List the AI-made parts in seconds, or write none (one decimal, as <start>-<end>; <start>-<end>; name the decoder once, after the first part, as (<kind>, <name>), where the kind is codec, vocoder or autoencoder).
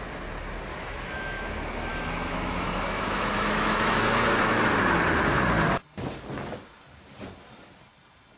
0.7-1.5 (autoencoder, DAC-VAE); 1.9-5.0